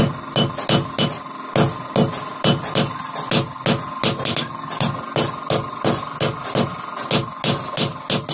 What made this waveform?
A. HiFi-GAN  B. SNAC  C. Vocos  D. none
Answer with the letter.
D